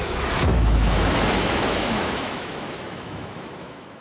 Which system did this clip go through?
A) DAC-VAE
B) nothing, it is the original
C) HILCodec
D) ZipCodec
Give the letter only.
A